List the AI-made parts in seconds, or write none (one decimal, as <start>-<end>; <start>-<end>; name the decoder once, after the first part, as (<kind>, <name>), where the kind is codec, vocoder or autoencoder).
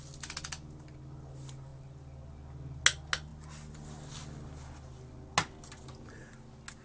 none